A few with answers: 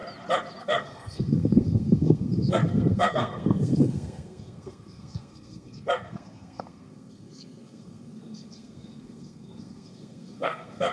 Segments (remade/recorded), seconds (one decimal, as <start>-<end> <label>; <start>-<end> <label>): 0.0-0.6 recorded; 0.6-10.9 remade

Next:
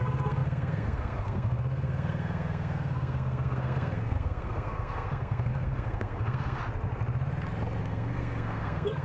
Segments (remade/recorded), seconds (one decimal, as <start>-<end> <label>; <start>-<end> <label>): 0.0-6.6 remade; 6.6-7.8 recorded; 7.8-9.0 remade

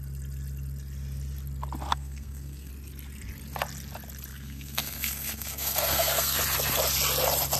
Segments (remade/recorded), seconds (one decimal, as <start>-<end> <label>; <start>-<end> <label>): 0.0-1.9 recorded; 1.9-2.7 remade; 2.7-4.3 recorded; 4.3-6.4 remade; 6.4-7.6 recorded

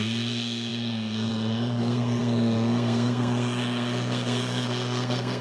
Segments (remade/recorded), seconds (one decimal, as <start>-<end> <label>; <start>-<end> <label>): 0.0-5.4 remade

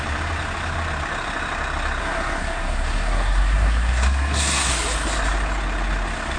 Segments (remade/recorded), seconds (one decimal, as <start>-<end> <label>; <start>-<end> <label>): 0.0-2.0 recorded; 2.0-4.7 remade; 4.7-6.4 recorded